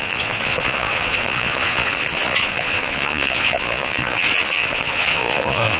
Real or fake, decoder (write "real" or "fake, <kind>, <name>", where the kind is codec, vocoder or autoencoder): fake, vocoder, Vocos